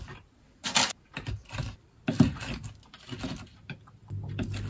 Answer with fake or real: real